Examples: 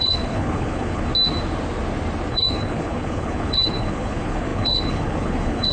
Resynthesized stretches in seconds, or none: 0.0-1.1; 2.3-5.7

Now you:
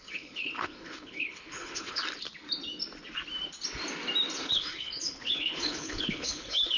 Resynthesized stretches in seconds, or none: 0.0-2.0; 4.4-6.8

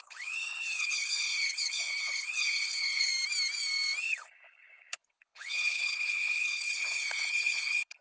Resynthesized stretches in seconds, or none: 0.0-3.1; 4.0-8.0